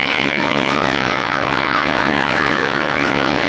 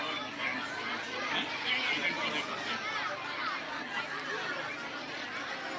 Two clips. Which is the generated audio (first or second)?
first